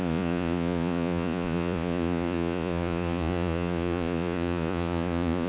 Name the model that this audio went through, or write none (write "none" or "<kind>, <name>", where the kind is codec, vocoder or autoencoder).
vocoder, Vocos